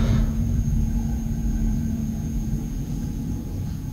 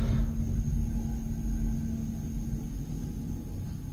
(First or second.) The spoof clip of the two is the first